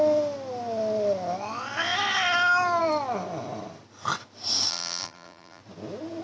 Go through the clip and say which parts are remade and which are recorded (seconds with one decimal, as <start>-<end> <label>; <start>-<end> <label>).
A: 0.0-4.7 recorded; 4.7-5.6 remade; 5.6-6.2 recorded